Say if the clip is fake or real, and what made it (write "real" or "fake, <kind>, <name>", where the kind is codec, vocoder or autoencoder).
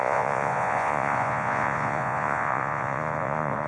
fake, vocoder, Vocos